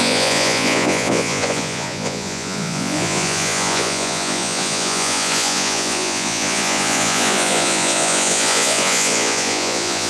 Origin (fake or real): fake